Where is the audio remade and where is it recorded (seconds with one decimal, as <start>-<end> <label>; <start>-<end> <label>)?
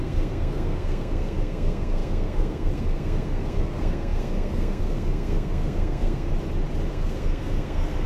0.0-6.3 remade; 6.3-6.9 recorded; 6.9-8.1 remade